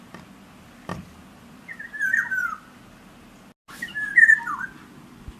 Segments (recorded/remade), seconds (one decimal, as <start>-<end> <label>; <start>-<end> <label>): 0.0-5.4 recorded